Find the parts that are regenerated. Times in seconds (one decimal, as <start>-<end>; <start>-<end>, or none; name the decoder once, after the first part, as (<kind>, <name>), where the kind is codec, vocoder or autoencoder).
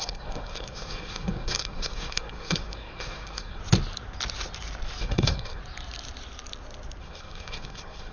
0.0-3.6 (codec, SNAC); 5.0-5.6; 7.0-8.1